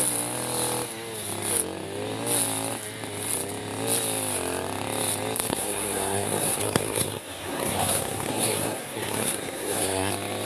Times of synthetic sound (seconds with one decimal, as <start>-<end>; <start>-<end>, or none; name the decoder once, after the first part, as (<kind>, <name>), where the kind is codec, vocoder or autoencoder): 5.5-10.1 (codec, SNAC)